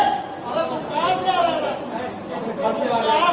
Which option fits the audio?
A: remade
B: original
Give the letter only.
B